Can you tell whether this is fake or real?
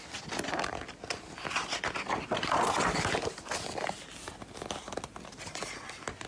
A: real